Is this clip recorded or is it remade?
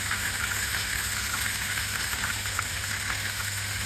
remade